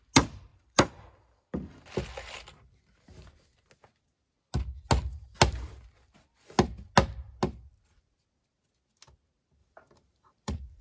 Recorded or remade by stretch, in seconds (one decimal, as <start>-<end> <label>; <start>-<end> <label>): 0.0-0.5 recorded; 0.5-1.1 remade; 1.1-9.6 recorded; 9.6-10.8 remade